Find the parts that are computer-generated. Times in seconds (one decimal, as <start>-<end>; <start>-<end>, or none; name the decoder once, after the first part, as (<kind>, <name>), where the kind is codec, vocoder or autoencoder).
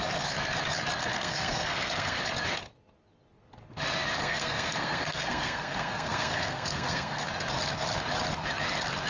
1.0-2.2 (codec, SNAC); 4.2-7.3